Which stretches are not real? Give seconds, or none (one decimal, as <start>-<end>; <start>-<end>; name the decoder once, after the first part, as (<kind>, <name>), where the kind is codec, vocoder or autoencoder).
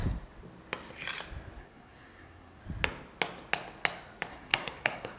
1.6-2.6 (codec, SNAC); 4.3-5.2